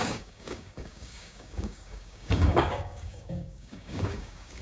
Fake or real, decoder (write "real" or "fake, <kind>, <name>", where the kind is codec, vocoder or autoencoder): fake, codec, DAC